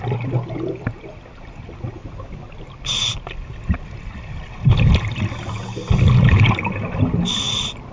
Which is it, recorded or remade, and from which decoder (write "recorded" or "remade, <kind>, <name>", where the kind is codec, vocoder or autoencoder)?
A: recorded